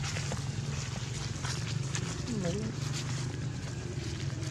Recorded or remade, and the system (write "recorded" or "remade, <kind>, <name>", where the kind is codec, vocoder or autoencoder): recorded